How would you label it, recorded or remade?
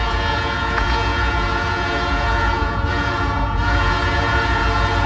remade